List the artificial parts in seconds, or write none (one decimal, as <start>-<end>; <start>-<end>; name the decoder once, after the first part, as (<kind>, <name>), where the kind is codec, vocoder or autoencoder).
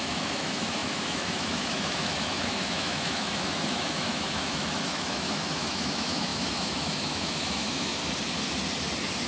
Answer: 0.0-8.0 (autoencoder, DAC-VAE)